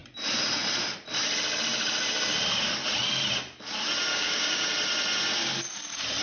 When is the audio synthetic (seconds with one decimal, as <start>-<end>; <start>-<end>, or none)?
4.1-4.7